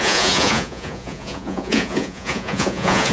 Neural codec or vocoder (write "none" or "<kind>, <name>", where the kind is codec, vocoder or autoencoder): vocoder, Vocos